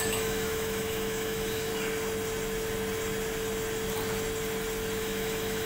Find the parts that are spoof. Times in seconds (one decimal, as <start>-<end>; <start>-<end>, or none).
0.0-1.7; 5.0-5.7